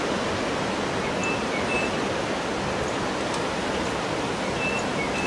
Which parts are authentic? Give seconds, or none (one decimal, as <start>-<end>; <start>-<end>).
0.0-5.3

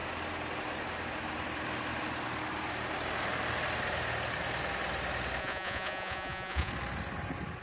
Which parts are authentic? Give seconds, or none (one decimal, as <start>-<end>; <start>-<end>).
0.0-5.4; 6.7-7.6

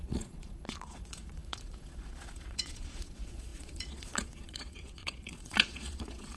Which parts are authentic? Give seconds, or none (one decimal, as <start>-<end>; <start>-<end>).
none